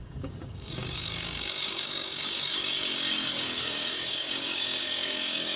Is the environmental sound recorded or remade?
remade